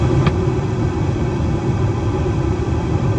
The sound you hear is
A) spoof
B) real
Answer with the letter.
A